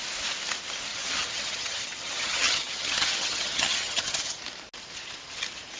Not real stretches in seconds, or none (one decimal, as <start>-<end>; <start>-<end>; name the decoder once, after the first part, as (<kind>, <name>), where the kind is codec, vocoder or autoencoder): 0.9-4.4 (vocoder, HiFi-GAN)